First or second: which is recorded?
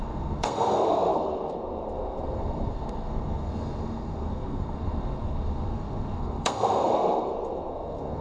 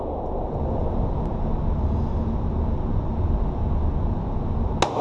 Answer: second